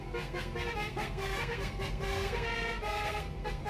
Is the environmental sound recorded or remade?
remade